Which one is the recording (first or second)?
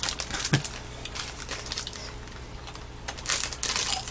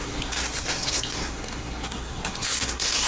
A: first